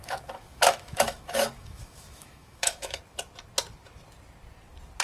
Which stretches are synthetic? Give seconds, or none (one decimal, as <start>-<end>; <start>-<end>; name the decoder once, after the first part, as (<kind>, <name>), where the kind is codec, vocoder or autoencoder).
0.0-3.0 (autoencoder, DAC-VAE)